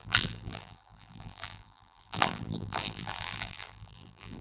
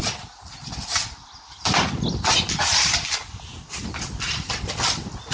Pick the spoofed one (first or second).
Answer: first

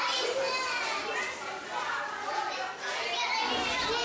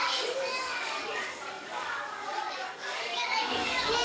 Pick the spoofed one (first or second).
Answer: second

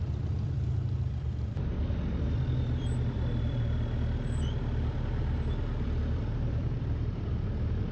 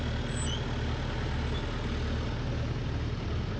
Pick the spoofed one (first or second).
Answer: first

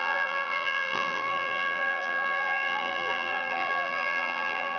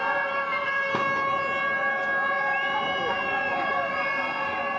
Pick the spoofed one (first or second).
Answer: first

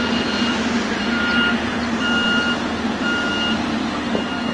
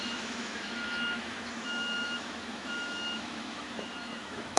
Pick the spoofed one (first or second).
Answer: second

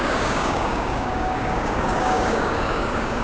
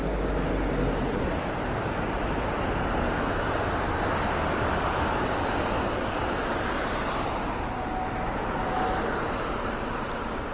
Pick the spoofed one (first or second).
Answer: first